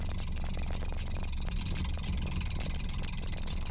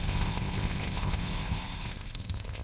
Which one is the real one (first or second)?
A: first